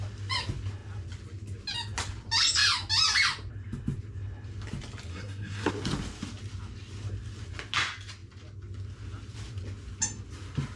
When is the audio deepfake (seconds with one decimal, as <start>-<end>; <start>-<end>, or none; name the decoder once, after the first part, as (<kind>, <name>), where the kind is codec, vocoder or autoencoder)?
5.1-5.7 (codec, SNAC)